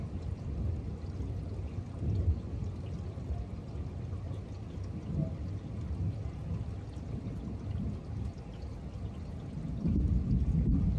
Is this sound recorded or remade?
recorded